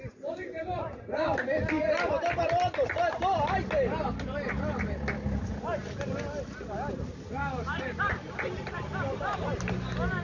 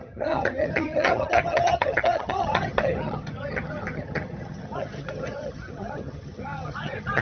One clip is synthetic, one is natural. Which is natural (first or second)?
first